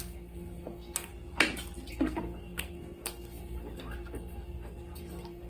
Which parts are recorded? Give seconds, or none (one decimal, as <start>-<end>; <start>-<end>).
1.1-1.9